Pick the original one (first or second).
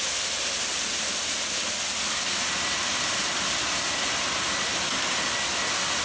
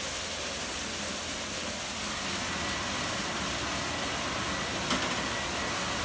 second